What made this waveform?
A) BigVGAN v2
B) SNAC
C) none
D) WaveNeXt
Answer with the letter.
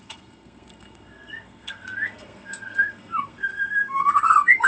B